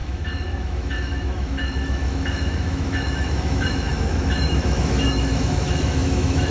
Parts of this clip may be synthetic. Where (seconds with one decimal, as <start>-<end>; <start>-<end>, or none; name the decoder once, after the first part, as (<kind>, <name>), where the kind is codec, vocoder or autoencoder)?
0.0-6.5 (autoencoder, DAC-VAE)